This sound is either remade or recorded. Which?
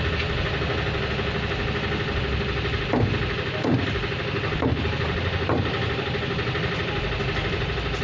recorded